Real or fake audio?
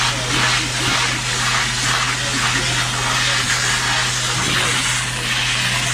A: real